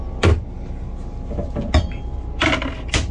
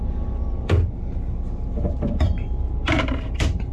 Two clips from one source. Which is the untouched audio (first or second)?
first